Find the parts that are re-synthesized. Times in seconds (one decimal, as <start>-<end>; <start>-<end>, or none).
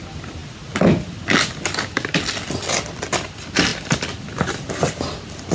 none